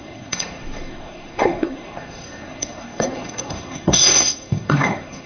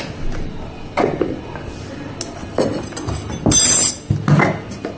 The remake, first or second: first